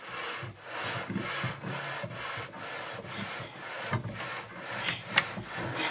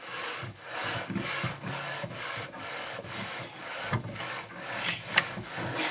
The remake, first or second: second